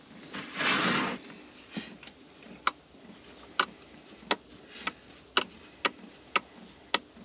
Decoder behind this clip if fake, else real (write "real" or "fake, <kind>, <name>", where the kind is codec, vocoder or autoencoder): real